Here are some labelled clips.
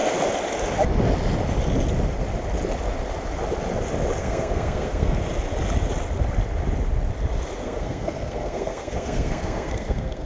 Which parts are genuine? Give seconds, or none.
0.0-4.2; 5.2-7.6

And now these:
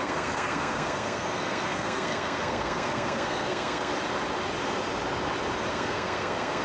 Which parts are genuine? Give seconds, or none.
3.9-5.7

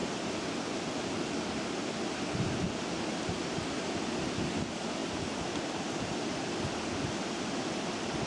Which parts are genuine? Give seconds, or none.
0.0-8.3

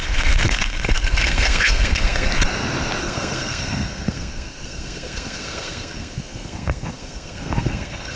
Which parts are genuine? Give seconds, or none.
2.3-3.0

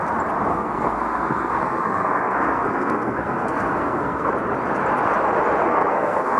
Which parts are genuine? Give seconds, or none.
0.0-0.5; 4.3-5.6

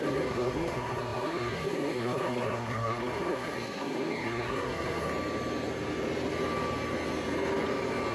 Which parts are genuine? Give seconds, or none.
5.1-8.1